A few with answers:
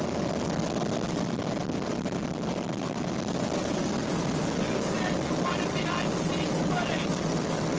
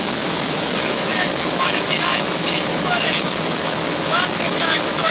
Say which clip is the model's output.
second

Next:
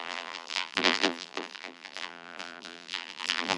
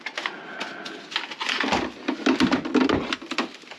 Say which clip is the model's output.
first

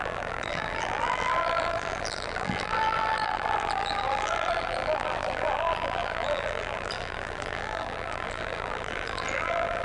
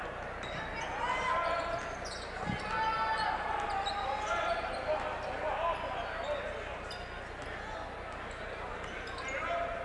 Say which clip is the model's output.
first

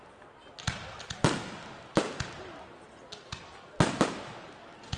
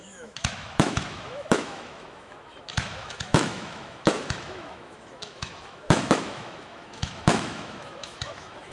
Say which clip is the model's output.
second